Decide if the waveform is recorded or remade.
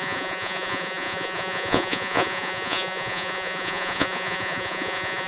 remade